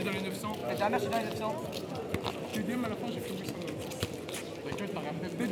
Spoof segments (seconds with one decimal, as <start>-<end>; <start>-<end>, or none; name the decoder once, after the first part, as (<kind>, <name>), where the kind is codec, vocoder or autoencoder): none